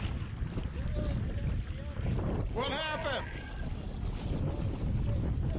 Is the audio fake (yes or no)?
no